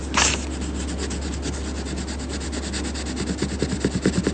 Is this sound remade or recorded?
recorded